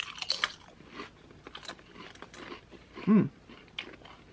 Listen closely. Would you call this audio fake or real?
real